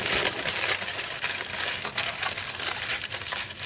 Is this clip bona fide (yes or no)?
yes